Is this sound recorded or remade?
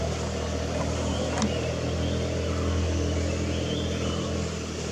recorded